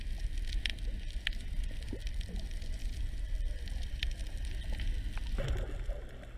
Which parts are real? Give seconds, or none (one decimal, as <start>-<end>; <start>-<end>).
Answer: 0.0-6.4